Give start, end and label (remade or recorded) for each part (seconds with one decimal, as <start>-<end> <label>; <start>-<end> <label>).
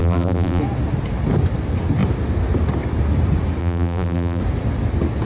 0.0-0.6 remade; 0.6-3.6 recorded; 3.6-4.4 remade; 4.4-5.3 recorded